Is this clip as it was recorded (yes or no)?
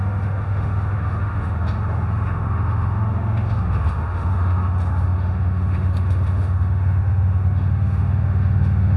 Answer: no